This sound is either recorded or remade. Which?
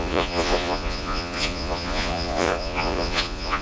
remade